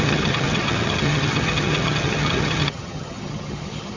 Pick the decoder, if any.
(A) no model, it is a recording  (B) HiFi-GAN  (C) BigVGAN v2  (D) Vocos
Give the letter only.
B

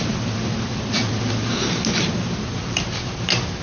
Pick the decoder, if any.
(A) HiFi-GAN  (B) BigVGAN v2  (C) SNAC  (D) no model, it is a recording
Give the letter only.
D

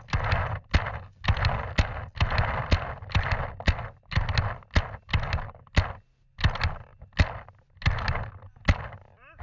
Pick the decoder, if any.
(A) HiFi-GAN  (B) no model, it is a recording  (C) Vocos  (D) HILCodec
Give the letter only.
B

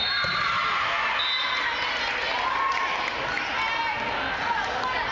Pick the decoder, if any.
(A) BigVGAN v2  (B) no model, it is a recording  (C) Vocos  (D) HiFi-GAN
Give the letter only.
B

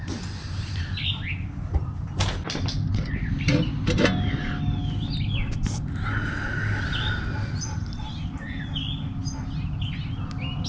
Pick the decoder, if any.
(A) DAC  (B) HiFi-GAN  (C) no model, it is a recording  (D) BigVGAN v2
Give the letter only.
C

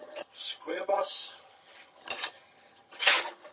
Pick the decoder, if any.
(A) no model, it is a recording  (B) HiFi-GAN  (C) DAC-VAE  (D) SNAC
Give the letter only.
B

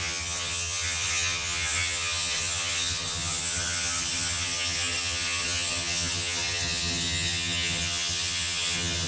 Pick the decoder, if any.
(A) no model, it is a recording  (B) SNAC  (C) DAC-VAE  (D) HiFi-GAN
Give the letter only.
D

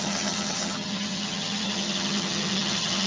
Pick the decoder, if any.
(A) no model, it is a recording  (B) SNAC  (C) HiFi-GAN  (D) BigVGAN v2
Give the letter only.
C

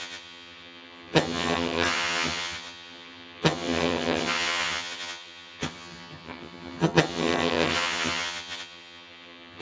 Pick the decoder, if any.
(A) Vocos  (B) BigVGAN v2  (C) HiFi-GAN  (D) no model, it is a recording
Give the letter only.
C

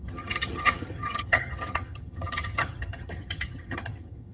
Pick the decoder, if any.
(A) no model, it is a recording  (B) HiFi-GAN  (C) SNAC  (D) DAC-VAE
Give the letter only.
B